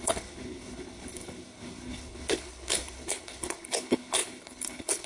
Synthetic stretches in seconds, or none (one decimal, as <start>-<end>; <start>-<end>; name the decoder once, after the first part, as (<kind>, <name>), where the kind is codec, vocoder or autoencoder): 0.0-5.1 (codec, HILCodec)